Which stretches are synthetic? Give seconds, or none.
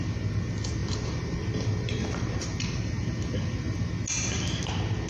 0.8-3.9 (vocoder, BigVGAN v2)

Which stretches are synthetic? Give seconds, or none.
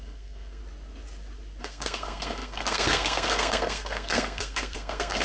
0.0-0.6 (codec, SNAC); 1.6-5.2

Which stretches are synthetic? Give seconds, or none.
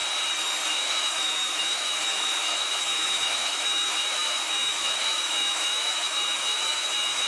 0.7-7.3 (autoencoder, DAC-VAE)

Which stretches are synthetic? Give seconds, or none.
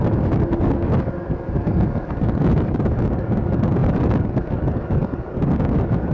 0.0-6.1 (codec, DAC)